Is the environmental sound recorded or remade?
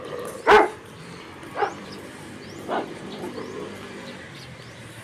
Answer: remade